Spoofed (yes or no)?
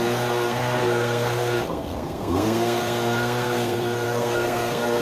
yes